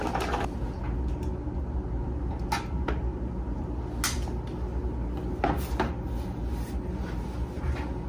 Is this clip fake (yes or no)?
no